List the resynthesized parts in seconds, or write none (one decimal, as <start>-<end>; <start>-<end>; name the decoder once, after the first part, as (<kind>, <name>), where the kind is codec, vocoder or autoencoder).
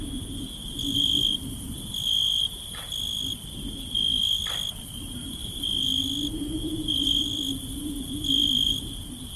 0.0-9.4 (vocoder, BigVGAN v2)